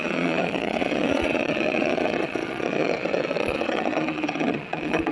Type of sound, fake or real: fake